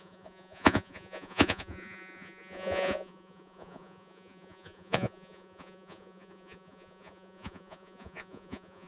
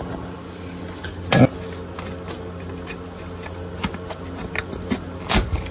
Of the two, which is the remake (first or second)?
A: first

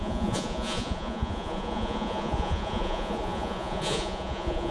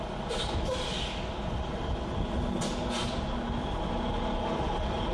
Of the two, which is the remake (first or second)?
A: first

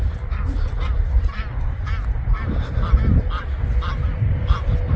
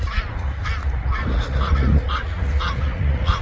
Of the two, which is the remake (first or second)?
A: second